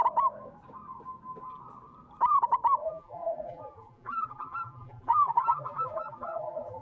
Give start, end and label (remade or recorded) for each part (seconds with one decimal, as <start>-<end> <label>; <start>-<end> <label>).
0.0-2.8 recorded; 2.8-6.8 remade